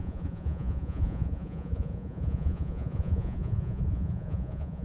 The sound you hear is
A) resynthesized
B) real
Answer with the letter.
A